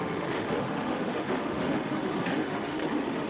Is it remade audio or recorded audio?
remade